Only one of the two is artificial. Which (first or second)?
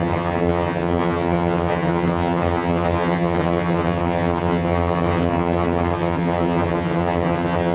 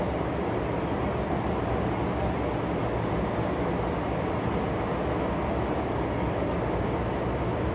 first